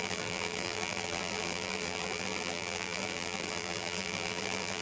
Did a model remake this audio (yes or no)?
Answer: yes